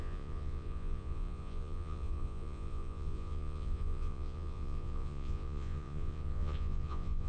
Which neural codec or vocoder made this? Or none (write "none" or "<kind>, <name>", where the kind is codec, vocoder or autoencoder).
vocoder, Vocos